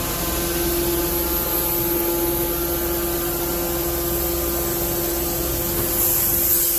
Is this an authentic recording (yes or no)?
yes